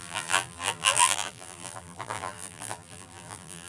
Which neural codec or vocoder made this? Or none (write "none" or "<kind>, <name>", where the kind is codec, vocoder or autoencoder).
vocoder, BigVGAN v2